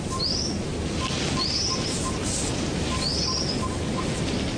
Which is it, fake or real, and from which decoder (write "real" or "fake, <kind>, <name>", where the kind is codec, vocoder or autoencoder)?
real